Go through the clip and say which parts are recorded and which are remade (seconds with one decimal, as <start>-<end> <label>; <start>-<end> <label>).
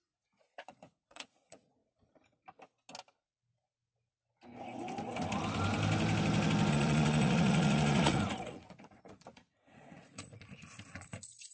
0.0-1.8 remade; 1.8-6.7 recorded; 6.7-11.5 remade